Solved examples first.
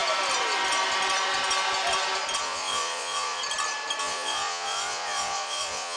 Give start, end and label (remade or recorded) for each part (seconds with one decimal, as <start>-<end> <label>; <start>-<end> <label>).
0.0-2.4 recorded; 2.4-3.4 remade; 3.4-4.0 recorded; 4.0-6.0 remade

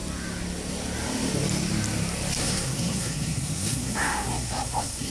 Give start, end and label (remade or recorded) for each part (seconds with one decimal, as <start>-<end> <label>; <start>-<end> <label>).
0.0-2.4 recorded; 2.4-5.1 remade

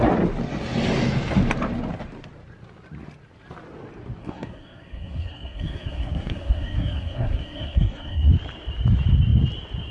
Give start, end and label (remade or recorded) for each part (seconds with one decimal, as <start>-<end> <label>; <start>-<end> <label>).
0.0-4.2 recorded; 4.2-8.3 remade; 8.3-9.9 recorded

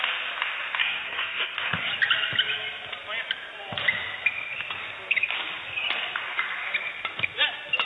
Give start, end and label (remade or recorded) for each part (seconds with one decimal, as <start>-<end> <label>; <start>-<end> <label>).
0.0-0.8 recorded; 0.8-1.9 remade; 1.9-7.9 recorded

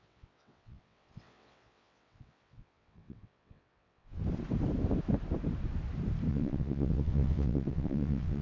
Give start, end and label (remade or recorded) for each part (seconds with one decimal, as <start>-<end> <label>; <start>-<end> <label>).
0.0-4.2 remade; 4.2-6.3 recorded; 6.3-8.4 remade